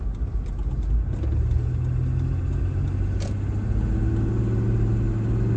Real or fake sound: real